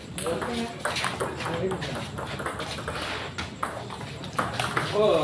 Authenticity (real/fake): real